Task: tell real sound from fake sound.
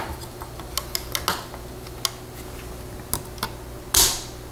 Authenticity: real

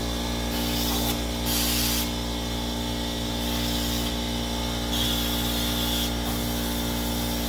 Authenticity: real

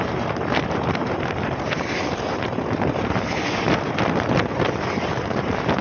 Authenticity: fake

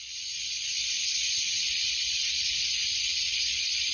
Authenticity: fake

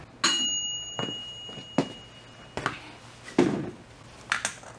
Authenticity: real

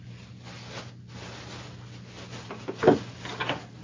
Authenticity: real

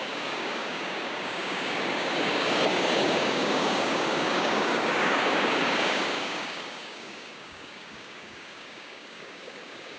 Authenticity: fake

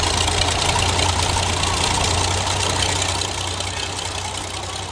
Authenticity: real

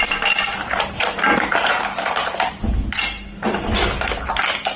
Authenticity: real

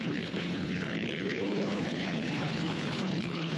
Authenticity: fake